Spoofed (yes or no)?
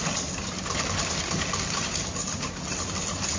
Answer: no